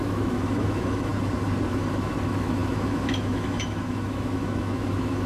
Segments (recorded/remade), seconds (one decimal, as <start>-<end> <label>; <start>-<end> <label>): 0.0-1.1 remade; 1.1-1.7 recorded; 1.7-5.3 remade